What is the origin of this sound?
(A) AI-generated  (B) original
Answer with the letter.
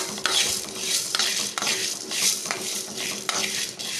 A